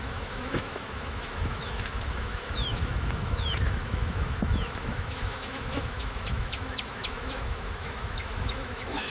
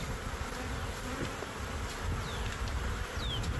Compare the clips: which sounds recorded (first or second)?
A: second